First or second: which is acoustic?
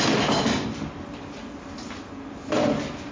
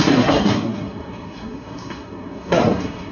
first